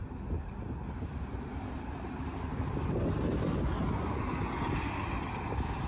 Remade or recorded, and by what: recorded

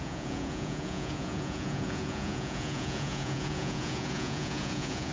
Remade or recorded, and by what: remade, vocoder, Vocos